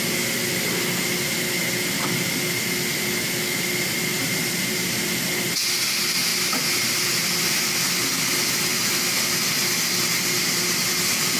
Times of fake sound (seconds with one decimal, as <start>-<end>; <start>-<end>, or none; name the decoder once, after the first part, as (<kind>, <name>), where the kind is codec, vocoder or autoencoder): 4.1-5.1 (vocoder, BigVGAN v2); 6.3-7.7